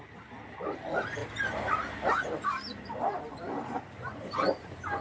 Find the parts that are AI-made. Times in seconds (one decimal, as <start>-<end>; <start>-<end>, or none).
1.2-4.2